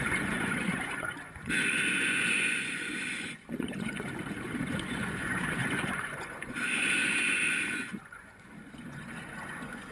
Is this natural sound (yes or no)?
no